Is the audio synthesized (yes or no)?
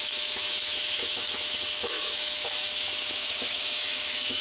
yes